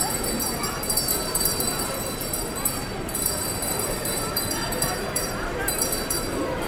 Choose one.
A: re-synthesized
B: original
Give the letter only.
A